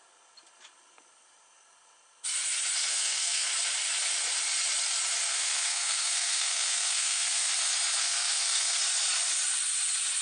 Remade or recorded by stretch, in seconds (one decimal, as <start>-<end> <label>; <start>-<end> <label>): 0.0-2.9 recorded; 2.9-3.5 remade; 3.5-5.3 recorded; 5.3-7.5 remade; 7.5-8.0 recorded; 8.0-8.8 remade; 8.8-10.2 recorded

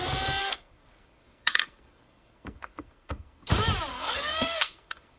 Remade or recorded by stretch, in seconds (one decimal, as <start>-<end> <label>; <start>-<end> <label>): 0.0-0.4 recorded; 0.4-3.5 remade; 3.5-3.9 recorded; 3.9-5.2 remade